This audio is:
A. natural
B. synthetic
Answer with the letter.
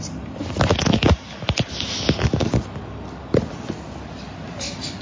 A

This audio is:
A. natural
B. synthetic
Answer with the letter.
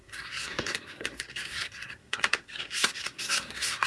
B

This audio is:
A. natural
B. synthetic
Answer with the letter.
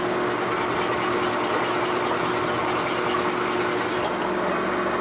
A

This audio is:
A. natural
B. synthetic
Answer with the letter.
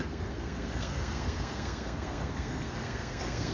B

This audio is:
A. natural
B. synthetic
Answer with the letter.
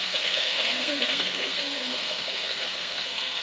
B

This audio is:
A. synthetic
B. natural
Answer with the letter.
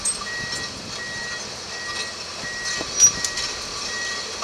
B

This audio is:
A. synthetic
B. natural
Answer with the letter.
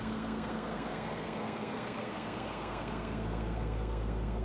A